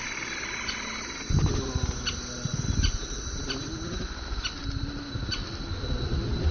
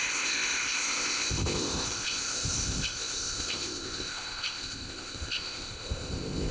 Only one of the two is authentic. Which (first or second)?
first